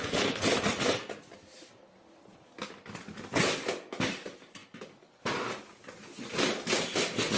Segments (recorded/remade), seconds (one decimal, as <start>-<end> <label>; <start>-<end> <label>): 0.0-7.4 recorded